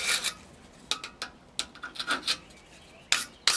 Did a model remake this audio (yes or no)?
no